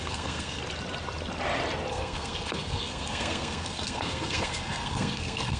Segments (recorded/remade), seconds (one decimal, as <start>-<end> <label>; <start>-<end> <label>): 0.0-0.6 remade; 0.6-1.9 recorded; 1.9-5.6 remade